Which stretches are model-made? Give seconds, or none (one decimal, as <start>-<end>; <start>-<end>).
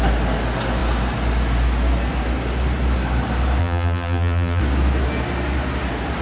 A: 3.6-4.6